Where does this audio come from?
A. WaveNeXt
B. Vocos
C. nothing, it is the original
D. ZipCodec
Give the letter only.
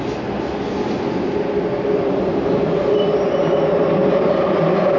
C